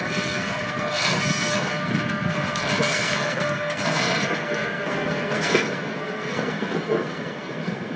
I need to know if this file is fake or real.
fake